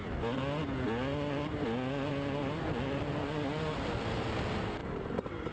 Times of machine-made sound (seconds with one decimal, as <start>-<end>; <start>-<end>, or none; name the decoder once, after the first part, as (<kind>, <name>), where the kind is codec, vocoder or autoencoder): 4.8-5.5 (vocoder, BigVGAN v2)